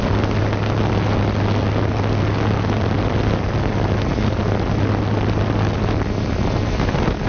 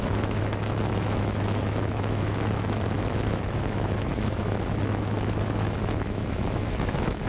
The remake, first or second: second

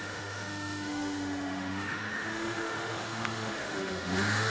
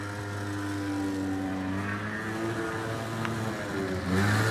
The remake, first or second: first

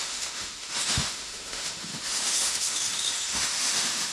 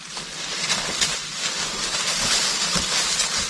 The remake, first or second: first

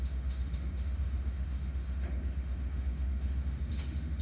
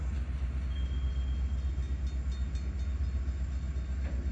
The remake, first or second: first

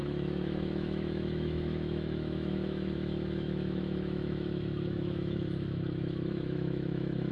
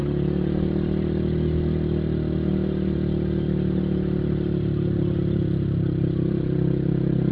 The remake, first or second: first